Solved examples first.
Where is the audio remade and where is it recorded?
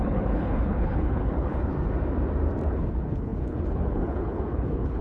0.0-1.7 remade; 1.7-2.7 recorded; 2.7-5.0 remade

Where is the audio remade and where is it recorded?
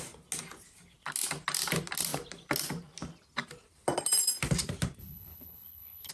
0.0-5.0 recorded; 5.0-6.1 remade